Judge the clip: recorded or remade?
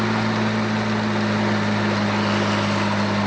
recorded